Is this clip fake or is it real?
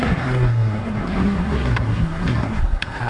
fake